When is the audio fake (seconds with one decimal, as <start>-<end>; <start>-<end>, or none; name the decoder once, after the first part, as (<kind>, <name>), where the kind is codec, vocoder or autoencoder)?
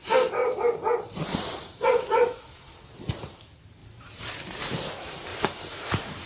0.4-3.1 (vocoder, BigVGAN v2); 3.8-4.3; 5.3-6.3